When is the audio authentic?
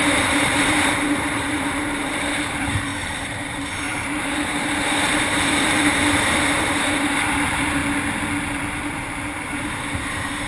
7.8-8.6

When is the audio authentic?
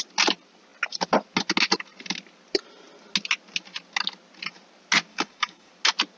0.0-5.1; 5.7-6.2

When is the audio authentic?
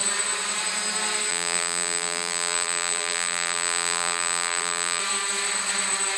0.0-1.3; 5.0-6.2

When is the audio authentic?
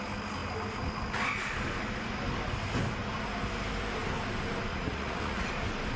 0.0-4.7; 5.5-6.0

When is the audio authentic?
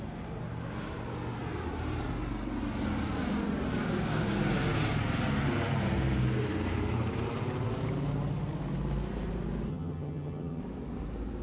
0.0-9.7; 10.6-11.4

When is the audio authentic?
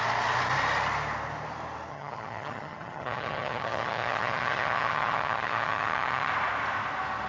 0.0-1.9; 6.3-7.3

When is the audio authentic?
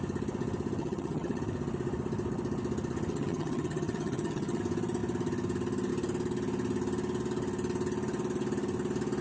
0.0-0.8; 1.4-3.1; 4.6-9.2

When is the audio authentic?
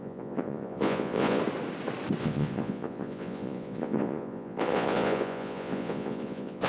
1.4-2.2